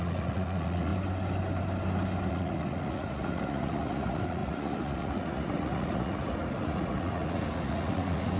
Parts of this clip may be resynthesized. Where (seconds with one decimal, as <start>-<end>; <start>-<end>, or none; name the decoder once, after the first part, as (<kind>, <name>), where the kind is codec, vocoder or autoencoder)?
0.0-0.9 (vocoder, Vocos); 2.3-8.4